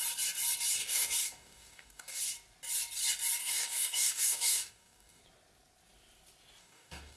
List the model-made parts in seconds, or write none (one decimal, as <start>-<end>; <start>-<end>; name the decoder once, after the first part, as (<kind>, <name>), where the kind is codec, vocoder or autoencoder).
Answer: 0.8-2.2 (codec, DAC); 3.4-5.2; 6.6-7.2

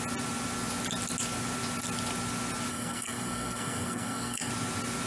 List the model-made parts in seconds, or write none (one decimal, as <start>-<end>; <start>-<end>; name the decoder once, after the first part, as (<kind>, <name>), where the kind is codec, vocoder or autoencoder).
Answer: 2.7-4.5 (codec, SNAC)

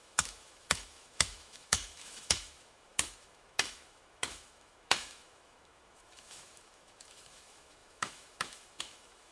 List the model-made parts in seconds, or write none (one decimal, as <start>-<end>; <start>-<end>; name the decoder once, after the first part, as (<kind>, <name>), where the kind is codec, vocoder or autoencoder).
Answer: 0.0-9.3 (autoencoder, DAC-VAE)

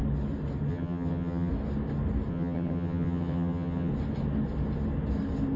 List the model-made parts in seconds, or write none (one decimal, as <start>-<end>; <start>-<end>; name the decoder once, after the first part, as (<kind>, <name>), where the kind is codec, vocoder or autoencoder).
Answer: 0.7-1.5 (vocoder, HiFi-GAN); 2.3-3.9

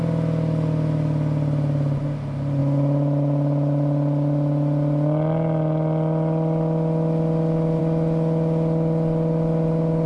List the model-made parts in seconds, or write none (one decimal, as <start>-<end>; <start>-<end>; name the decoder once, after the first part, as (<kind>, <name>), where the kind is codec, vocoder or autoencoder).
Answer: none